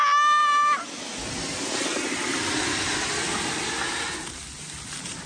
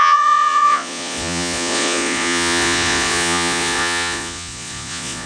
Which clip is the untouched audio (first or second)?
first